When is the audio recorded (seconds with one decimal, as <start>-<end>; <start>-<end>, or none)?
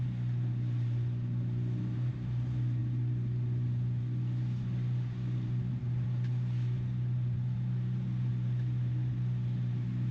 0.0-10.1